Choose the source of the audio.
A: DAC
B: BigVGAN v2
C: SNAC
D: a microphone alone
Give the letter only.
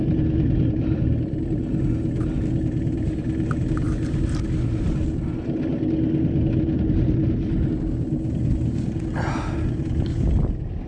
D